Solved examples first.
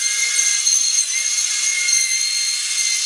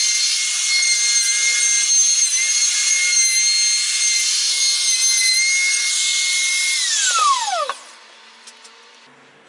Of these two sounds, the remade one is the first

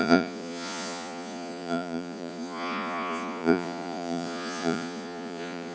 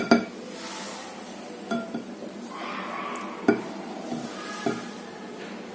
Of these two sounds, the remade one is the first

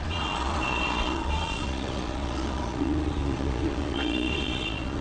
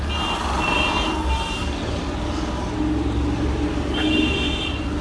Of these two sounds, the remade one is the first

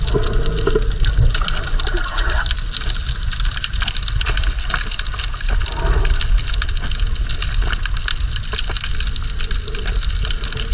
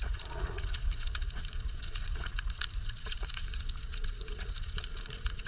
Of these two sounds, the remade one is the second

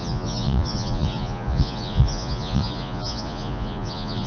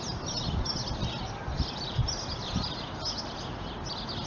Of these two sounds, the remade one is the first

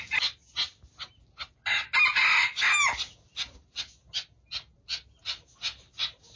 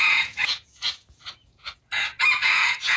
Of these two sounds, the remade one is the second